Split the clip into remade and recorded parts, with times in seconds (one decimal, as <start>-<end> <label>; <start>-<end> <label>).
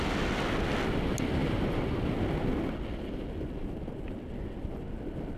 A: 0.0-5.4 recorded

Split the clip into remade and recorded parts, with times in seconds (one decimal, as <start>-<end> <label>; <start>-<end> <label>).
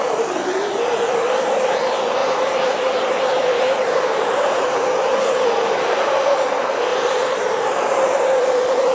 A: 0.0-2.2 recorded; 2.2-5.2 remade; 5.2-6.9 recorded; 6.9-8.4 remade; 8.4-8.9 recorded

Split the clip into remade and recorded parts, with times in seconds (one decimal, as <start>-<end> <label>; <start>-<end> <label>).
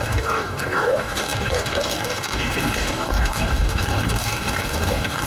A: 0.0-5.3 remade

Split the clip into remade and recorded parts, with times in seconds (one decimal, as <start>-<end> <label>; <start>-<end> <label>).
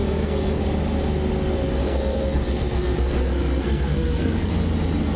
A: 0.0-0.6 remade; 0.6-1.8 recorded; 1.8-4.5 remade; 4.5-5.2 recorded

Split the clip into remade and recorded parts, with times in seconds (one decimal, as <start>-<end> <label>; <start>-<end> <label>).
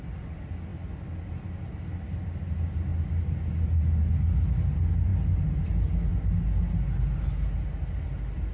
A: 0.0-8.5 recorded